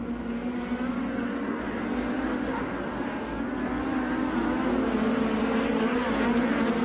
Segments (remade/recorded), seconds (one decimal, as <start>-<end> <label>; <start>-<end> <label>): 0.0-1.0 recorded; 1.0-1.6 remade; 1.6-6.8 recorded